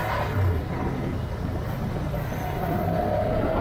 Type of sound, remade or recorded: recorded